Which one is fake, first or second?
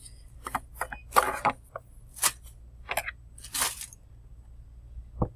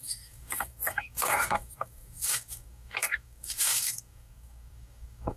second